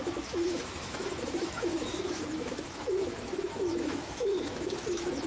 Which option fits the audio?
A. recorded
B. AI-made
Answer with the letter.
B